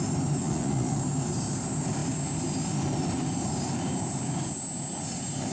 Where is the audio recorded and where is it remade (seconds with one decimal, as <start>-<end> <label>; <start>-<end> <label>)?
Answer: 0.0-0.4 recorded; 0.4-1.0 remade; 1.0-5.5 recorded